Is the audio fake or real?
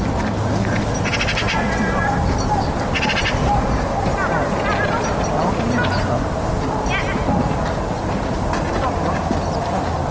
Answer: real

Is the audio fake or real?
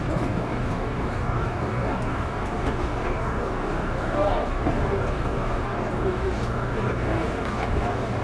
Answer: fake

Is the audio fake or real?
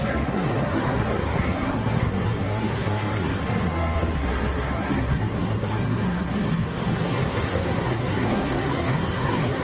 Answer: fake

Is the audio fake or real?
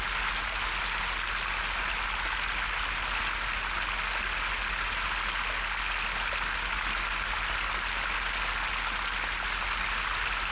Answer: real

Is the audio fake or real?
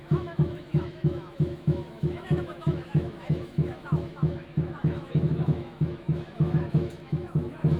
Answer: fake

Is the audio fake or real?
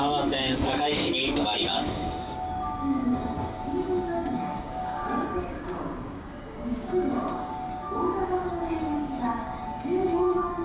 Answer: fake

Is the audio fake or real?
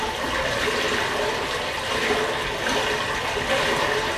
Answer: real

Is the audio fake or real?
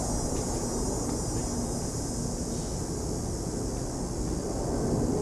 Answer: real